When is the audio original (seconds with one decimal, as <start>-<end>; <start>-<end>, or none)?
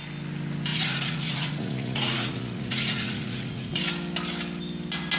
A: 0.0-0.7; 3.8-5.2